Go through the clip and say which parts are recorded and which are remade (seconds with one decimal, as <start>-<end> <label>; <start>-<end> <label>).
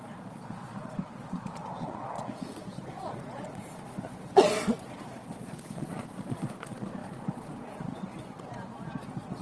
0.0-9.4 remade